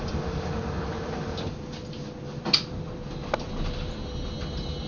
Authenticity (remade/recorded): recorded